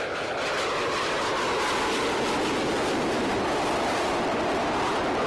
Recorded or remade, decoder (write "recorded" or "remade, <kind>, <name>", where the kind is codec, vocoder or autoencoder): recorded